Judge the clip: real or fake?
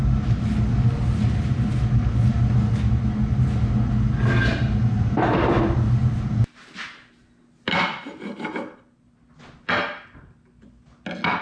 real